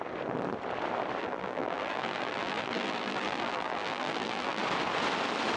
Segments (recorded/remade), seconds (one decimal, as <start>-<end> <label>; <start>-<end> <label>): 0.0-1.2 recorded; 1.2-4.6 remade; 4.6-5.6 recorded